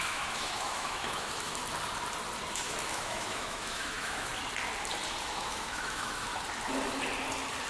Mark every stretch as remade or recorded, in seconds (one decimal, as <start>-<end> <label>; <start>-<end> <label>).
0.0-1.6 remade; 1.6-2.5 recorded; 2.5-4.3 remade; 4.3-5.2 recorded; 5.2-6.3 remade; 6.3-7.7 recorded